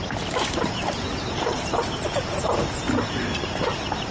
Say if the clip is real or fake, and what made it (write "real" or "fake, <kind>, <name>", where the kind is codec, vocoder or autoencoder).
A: fake, vocoder, BigVGAN v2